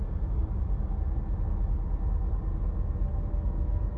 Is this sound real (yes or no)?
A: yes